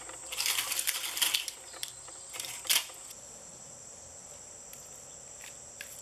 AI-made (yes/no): no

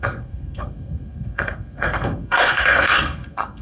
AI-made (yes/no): yes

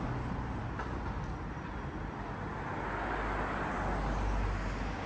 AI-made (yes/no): no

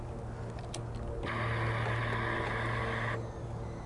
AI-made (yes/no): no